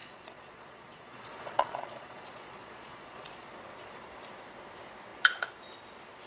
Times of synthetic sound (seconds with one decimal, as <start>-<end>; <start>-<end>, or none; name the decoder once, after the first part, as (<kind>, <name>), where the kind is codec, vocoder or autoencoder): 0.0-3.5 (vocoder, Vocos)